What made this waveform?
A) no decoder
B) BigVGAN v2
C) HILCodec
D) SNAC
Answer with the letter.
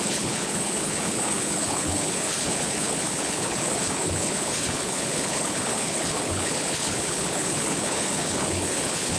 C